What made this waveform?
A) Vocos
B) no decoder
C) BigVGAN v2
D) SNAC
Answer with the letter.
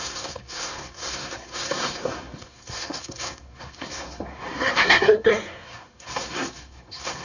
D